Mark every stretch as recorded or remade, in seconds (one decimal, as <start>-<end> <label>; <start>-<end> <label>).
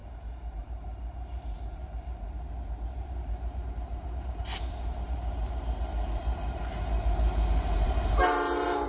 0.0-0.5 recorded; 0.5-8.9 remade